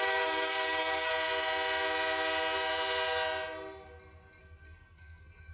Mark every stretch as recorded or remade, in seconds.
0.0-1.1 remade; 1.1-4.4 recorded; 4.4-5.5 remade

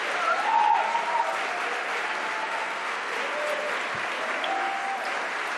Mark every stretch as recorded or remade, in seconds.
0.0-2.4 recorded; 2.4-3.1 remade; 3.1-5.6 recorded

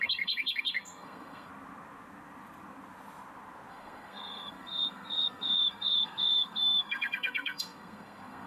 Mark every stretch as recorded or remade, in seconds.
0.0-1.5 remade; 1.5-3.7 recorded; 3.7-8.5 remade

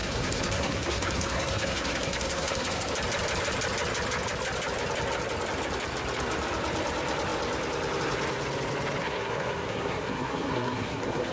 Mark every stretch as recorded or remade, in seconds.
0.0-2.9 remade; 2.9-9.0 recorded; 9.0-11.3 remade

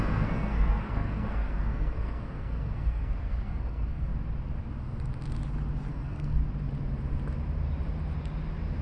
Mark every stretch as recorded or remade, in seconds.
0.0-4.1 remade; 4.1-5.9 recorded; 5.9-6.4 remade; 6.4-8.8 recorded

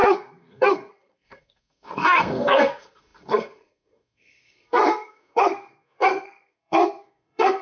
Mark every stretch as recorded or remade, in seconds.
0.0-7.6 remade